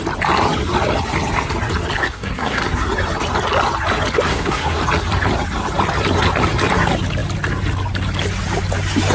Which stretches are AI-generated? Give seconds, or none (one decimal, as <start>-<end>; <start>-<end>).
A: 2.0-2.6; 4.3-4.8